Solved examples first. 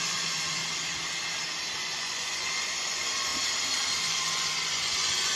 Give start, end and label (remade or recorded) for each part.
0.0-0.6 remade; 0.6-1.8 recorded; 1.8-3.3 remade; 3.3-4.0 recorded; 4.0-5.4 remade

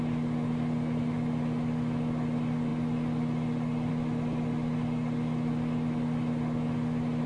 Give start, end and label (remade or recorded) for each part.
0.0-7.3 recorded